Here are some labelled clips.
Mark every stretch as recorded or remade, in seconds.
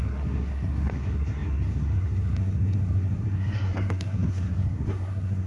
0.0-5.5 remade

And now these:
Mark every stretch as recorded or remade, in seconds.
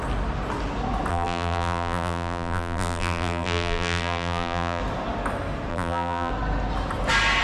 0.0-1.1 recorded; 1.1-4.8 remade; 4.8-5.7 recorded; 5.7-6.3 remade; 6.3-7.4 recorded